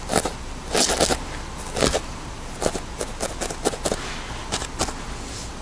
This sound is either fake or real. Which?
real